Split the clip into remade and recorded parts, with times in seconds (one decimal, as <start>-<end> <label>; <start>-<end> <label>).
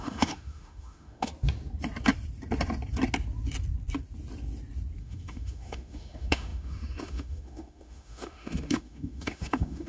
0.0-1.3 remade; 1.3-5.0 recorded; 5.0-9.9 remade